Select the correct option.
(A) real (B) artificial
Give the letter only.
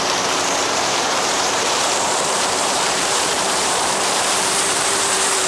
B